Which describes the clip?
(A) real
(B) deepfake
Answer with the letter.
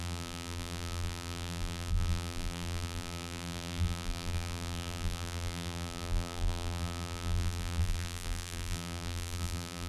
B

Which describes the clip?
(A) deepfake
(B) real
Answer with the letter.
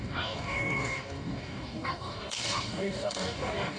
A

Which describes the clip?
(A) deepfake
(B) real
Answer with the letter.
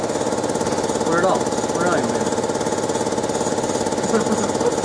B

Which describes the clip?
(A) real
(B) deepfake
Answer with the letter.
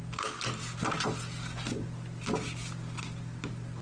A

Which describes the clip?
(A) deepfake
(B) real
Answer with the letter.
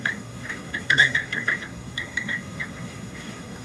A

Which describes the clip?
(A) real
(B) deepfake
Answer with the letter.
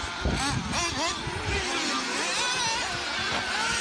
A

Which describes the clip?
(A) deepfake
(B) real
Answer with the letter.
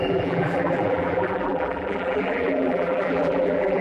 A